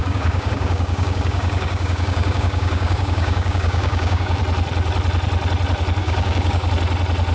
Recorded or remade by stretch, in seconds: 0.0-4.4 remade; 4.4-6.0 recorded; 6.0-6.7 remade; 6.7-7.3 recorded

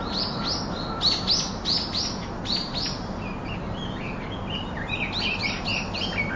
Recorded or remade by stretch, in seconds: 0.0-6.4 recorded